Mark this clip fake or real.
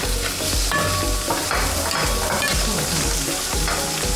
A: real